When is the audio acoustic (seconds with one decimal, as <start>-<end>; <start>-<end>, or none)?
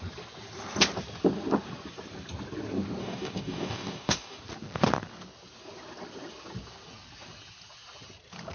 0.0-3.0; 4.4-8.5